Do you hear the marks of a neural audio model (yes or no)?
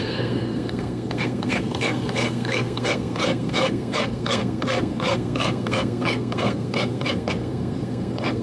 yes